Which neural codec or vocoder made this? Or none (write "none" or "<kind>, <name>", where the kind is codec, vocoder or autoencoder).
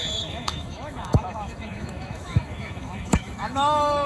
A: autoencoder, DAC-VAE